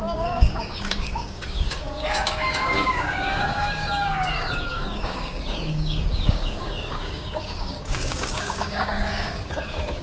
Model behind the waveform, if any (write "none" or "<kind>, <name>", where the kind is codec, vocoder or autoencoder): codec, DAC